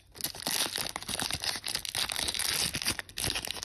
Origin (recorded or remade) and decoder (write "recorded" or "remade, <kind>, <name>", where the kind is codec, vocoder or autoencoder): recorded